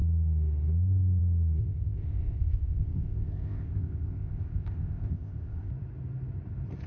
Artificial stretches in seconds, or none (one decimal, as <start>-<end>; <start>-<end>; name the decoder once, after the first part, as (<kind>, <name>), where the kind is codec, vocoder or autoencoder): 1.6-5.7 (codec, ZipCodec)